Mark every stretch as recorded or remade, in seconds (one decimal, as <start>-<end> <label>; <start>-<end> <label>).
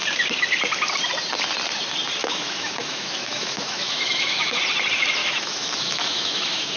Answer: 0.0-2.2 recorded; 2.2-4.6 remade; 4.6-5.2 recorded; 5.2-6.8 remade